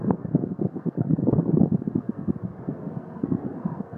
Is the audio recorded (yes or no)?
no